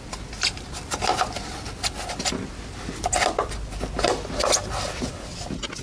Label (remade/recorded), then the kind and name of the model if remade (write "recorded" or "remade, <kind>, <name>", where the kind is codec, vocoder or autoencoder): recorded